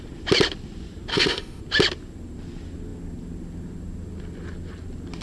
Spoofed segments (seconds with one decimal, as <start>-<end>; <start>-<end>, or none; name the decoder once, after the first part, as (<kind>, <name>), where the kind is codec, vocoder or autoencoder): 1.1-1.6 (autoencoder, DAC-VAE)